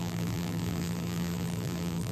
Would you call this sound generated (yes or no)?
yes